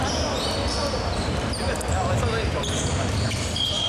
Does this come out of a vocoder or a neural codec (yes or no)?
no